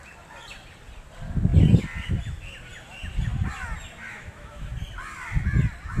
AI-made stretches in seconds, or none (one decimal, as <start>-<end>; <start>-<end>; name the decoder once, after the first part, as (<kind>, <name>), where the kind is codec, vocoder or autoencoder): 4.1-4.7 (autoencoder, DAC-VAE)